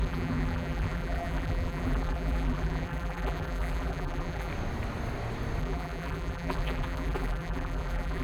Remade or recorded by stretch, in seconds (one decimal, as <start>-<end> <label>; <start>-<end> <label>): 0.0-4.5 remade; 4.5-5.6 recorded; 5.6-8.2 remade